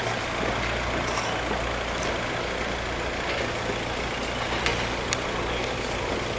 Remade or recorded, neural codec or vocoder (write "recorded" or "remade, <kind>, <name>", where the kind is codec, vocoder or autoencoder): recorded